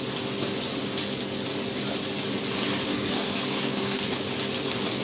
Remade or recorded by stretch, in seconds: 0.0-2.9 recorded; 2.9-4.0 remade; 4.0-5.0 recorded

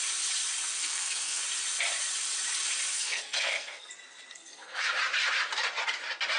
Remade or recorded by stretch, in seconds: 0.0-0.8 recorded; 0.8-1.4 remade; 1.4-2.9 recorded; 2.9-3.9 remade; 3.9-4.3 recorded; 4.3-4.9 remade; 4.9-6.4 recorded

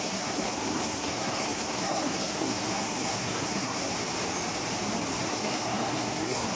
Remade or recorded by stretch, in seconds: 0.0-3.9 remade; 3.9-5.2 recorded; 5.2-6.5 remade

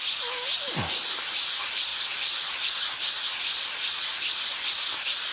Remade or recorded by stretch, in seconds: 0.0-5.3 recorded